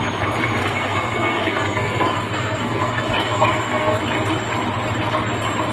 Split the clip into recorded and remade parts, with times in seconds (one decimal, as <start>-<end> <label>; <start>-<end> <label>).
0.0-0.6 recorded; 0.6-4.0 remade; 4.0-5.7 recorded